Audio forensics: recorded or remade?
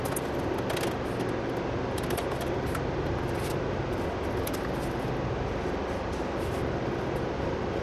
recorded